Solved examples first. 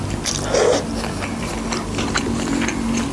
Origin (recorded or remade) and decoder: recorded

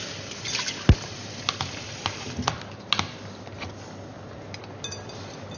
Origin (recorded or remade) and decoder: recorded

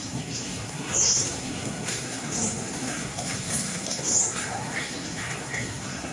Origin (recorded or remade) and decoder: remade, codec, SNAC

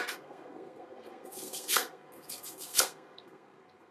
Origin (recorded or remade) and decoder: remade, codec, SNAC